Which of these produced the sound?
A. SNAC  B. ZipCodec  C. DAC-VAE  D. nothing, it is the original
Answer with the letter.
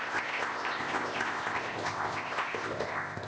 B